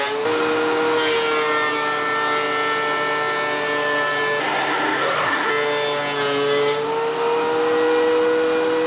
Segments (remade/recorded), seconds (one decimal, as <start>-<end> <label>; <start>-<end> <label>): 0.0-4.4 recorded; 4.4-5.5 remade; 5.5-8.9 recorded